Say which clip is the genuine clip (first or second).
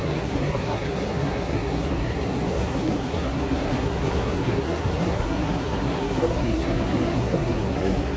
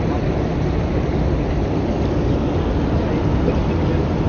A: second